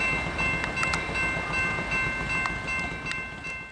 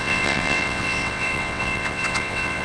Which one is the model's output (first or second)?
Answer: second